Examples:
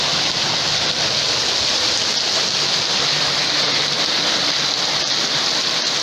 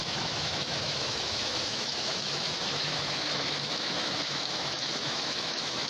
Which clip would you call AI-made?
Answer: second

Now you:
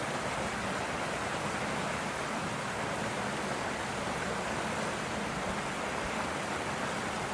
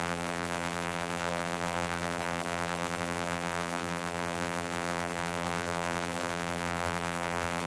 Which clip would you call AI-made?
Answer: second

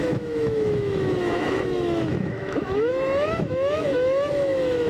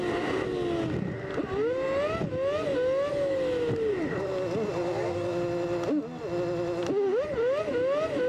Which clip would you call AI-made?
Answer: first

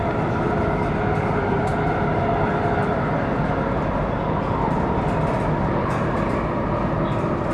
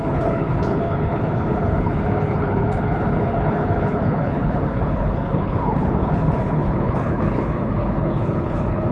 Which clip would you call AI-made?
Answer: second